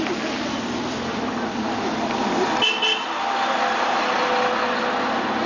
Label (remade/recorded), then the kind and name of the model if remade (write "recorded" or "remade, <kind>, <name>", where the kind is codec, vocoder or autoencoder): recorded